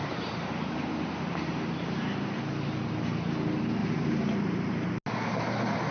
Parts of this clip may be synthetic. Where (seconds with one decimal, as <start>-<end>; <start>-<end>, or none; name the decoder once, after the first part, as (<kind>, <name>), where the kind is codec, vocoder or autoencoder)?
0.0-1.5 (vocoder, BigVGAN v2); 3.8-4.9